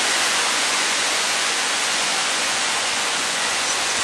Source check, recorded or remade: remade